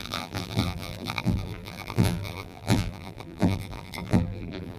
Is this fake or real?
fake